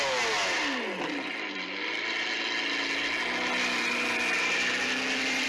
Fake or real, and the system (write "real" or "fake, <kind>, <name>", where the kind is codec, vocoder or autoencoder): real